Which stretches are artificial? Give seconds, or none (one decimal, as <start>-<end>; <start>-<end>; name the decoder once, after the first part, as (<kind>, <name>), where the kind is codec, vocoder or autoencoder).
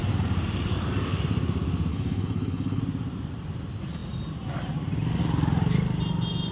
1.9-2.8 (codec, HILCodec)